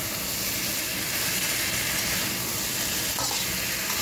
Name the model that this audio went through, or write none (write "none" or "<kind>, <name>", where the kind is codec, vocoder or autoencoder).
none